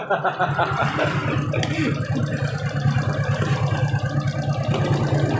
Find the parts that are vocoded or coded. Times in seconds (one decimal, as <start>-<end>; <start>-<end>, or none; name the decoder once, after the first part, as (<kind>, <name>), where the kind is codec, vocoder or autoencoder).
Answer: none